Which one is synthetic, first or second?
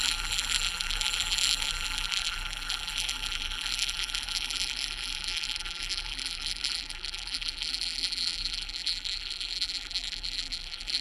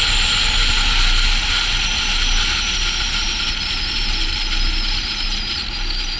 first